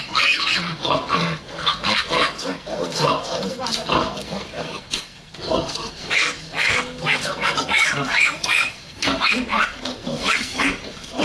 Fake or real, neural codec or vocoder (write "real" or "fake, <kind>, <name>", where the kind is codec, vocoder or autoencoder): fake, codec, SNAC